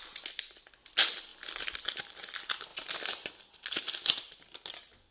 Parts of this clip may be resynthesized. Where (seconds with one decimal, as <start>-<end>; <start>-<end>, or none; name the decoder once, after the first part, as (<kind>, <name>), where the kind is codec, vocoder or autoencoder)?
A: none